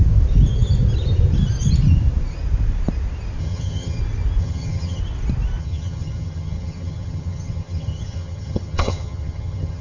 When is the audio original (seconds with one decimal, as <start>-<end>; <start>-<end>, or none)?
0.0-3.4; 4.0-4.4; 5.0-5.6

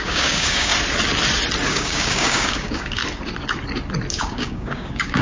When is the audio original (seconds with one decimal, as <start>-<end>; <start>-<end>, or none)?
0.7-1.7; 3.0-4.1

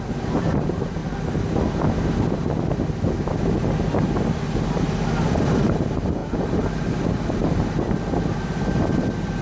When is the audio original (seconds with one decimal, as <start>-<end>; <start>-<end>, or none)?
1.0-4.7; 6.2-6.9

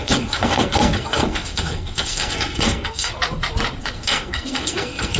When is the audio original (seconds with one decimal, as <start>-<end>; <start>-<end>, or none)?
3.1-3.8

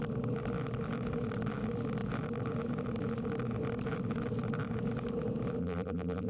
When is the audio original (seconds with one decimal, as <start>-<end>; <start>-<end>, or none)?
0.0-5.6